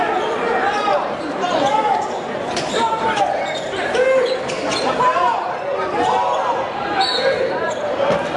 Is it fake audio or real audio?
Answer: fake